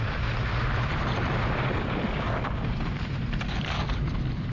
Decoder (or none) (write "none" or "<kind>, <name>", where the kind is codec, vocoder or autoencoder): none